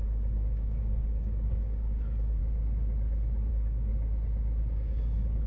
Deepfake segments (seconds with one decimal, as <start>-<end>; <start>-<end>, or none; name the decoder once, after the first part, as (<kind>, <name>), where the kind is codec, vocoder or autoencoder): 0.0-2.4 (codec, DAC); 3.5-3.9; 4.6-5.5

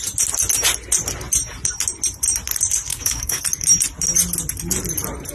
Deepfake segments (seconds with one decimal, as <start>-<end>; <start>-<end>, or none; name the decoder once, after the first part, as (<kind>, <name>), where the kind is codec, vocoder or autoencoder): 2.9-3.4 (codec, DAC)

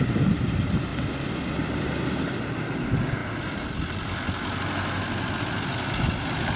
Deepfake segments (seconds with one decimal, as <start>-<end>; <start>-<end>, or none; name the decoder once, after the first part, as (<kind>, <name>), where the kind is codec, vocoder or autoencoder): none

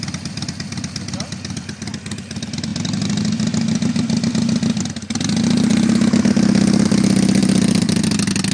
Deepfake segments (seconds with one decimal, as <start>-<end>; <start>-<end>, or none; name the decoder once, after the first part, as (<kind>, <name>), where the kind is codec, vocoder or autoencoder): none

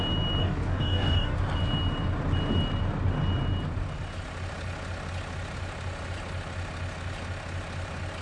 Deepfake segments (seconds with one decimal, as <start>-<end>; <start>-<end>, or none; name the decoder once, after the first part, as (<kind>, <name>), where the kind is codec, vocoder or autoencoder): 0.4-1.4 (codec, DAC)